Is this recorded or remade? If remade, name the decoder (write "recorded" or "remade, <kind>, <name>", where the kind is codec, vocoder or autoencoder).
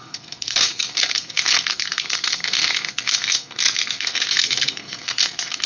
remade, codec, SNAC